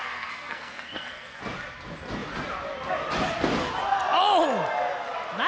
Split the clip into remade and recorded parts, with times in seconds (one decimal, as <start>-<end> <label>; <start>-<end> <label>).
0.0-1.4 remade; 1.4-5.5 recorded